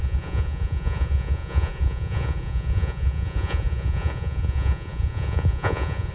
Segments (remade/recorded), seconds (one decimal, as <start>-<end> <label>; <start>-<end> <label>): 0.0-6.1 remade